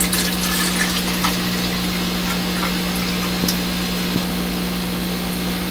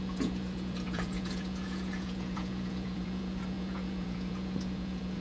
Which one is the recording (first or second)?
first